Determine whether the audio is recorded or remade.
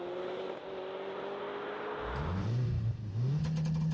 recorded